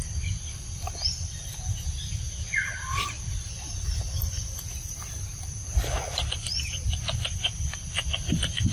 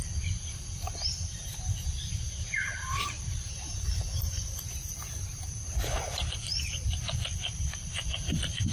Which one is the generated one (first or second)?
second